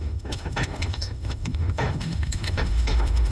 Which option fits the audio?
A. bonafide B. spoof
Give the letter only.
B